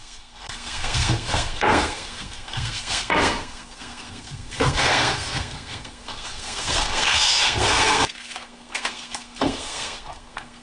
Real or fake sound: fake